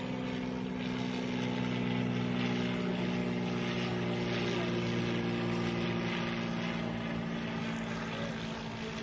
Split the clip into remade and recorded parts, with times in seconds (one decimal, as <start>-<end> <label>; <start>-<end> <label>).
0.0-9.0 recorded